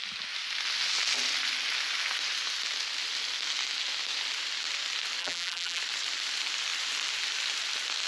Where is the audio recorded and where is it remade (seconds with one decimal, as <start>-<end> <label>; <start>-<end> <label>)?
0.0-5.2 recorded; 5.2-5.8 remade; 5.8-8.1 recorded